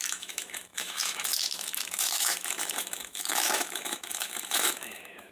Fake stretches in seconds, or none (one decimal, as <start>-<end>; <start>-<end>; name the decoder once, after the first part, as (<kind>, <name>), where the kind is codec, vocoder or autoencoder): 0.0-5.3 (autoencoder, DAC-VAE)

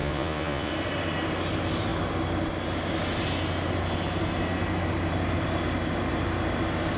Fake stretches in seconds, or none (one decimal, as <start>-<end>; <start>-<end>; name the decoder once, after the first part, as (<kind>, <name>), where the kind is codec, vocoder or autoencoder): 0.0-0.7 (vocoder, Vocos)

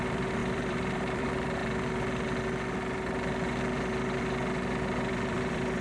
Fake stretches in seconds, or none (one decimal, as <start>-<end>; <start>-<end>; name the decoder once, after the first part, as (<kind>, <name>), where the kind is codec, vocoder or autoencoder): 0.0-1.6 (vocoder, BigVGAN v2); 5.1-5.8

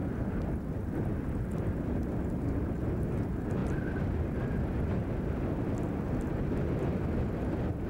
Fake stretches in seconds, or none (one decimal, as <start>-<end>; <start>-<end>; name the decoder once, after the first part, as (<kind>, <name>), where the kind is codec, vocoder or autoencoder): none

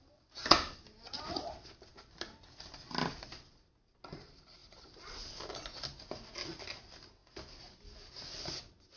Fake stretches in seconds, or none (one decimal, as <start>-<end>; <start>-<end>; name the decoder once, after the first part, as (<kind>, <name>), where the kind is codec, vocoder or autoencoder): none

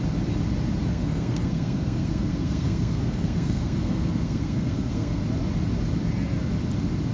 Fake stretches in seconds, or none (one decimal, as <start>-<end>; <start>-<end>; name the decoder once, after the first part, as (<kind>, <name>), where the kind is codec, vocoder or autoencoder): 0.9-5.2 (codec, SNAC)

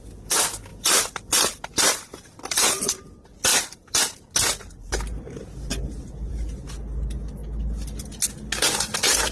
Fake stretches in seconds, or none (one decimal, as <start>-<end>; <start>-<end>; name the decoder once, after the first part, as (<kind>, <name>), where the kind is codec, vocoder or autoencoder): 0.7-3.0 (vocoder, BigVGAN v2); 3.5-4.0